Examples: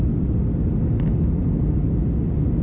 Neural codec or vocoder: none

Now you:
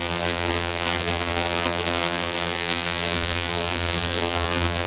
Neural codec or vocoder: vocoder, BigVGAN v2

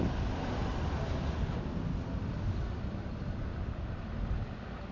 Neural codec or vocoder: none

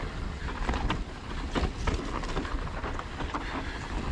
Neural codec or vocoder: none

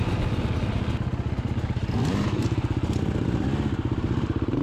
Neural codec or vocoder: none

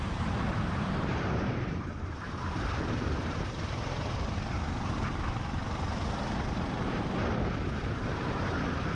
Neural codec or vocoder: vocoder, BigVGAN v2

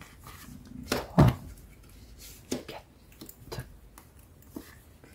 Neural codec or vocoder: none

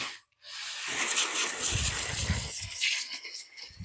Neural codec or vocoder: none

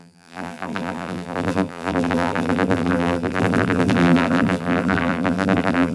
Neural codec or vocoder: vocoder, BigVGAN v2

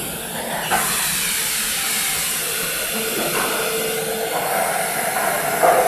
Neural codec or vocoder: none